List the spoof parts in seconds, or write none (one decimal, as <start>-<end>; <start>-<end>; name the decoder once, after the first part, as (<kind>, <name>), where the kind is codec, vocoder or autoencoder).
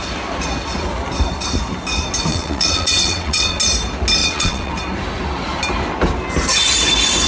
2.3-3.6 (vocoder, WaveNeXt); 4.2-4.7